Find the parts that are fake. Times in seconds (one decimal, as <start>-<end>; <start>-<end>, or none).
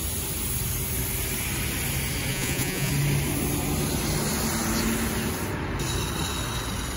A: 2.3-2.9